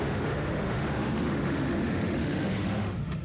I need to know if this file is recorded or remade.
remade